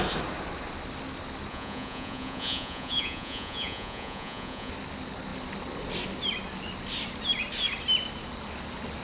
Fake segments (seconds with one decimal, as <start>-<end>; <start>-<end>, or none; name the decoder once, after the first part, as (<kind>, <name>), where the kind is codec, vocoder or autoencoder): 1.5-4.7 (vocoder, Vocos)